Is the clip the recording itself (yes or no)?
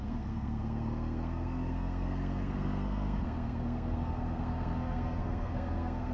no